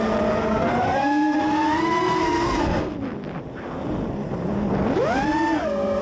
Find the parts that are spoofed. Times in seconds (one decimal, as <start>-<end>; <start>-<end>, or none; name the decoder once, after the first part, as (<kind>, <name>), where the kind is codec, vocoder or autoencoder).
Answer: 0.4-2.9 (codec, SNAC); 5.3-6.0

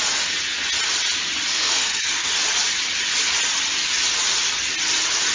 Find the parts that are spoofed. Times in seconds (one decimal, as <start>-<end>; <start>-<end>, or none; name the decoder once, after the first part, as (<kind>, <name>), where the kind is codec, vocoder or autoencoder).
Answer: 1.5-2.3 (codec, SNAC)